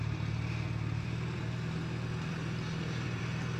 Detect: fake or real fake